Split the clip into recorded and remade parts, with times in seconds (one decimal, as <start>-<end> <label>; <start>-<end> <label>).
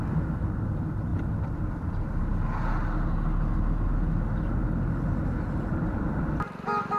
0.0-7.0 recorded